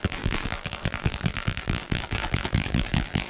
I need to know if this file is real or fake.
fake